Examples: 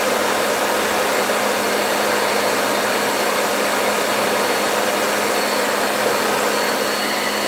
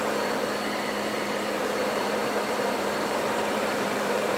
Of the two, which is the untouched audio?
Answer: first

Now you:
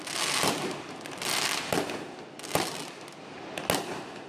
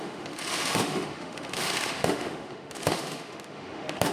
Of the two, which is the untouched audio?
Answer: first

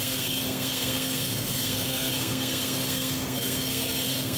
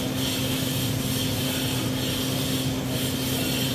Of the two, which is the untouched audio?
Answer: second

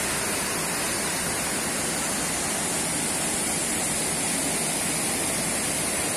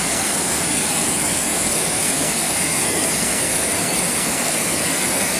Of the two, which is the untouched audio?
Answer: first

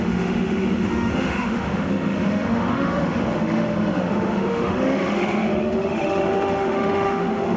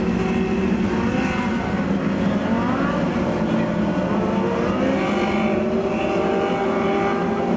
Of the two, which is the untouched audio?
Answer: second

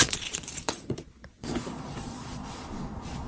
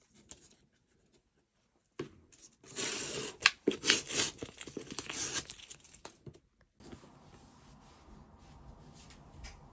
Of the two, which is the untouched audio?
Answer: second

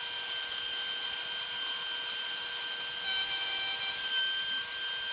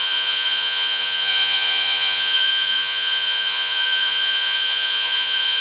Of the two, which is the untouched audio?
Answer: first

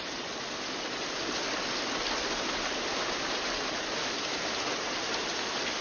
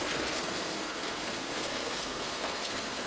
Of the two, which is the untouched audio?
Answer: first